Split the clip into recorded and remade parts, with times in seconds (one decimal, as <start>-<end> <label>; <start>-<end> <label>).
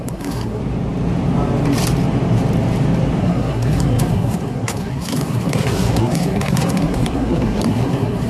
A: 0.0-0.6 remade; 0.6-3.2 recorded; 3.2-8.3 remade